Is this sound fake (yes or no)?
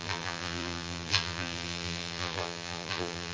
yes